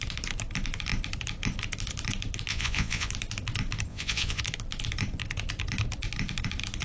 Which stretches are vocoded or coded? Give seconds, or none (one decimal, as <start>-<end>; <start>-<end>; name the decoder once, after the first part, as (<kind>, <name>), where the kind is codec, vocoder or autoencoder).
2.5-3.1 (vocoder, Vocos); 3.9-4.4